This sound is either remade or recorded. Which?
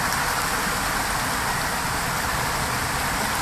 recorded